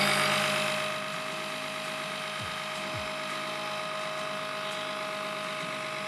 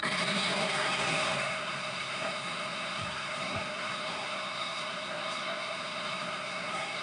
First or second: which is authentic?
first